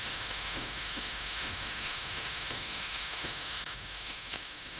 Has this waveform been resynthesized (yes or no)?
yes